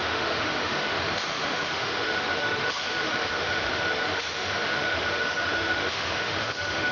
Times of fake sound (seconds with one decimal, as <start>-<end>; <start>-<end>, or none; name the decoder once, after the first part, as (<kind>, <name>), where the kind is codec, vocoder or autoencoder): 0.0-6.9 (autoencoder, DAC-VAE)